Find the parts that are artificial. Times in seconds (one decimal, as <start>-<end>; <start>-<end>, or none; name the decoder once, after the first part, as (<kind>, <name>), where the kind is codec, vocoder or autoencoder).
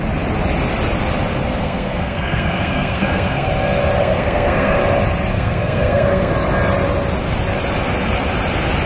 1.6-3.5 (codec, SNAC); 4.0-4.8; 5.3-6.3